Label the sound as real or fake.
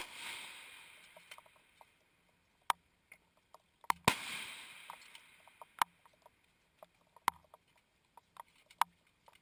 real